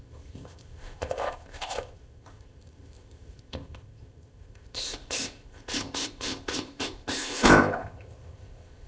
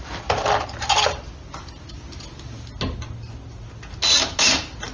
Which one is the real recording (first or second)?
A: second